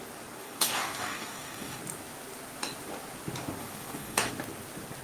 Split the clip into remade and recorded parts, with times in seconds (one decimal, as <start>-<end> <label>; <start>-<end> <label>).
0.0-0.4 recorded; 0.4-1.8 remade; 1.8-3.6 recorded; 3.6-4.3 remade; 4.3-5.0 recorded